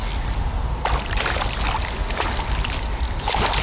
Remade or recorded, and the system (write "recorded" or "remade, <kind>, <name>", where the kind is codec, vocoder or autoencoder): recorded